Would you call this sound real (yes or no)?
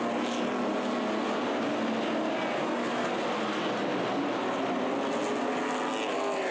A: yes